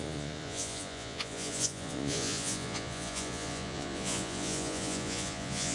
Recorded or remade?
remade